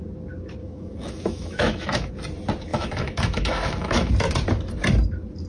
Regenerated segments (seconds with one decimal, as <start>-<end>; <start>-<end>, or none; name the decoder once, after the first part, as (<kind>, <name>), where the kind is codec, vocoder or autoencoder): 0.6-2.1 (autoencoder, DAC-VAE); 2.7-4.1